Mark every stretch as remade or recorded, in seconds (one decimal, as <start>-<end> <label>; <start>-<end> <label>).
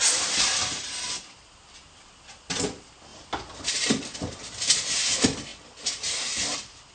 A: 0.0-6.9 recorded